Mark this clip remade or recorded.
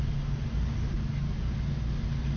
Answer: recorded